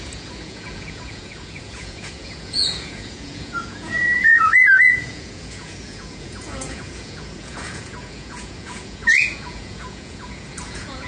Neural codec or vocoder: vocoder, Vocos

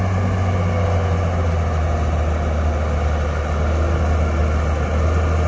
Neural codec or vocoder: none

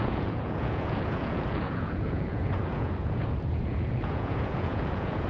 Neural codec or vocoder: vocoder, Vocos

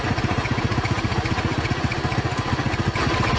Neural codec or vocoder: none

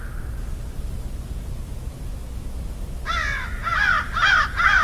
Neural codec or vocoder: none